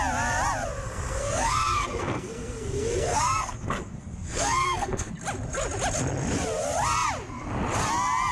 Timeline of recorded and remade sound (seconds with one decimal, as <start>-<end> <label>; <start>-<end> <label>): 0.0-0.9 recorded; 0.9-5.1 remade; 5.1-8.3 recorded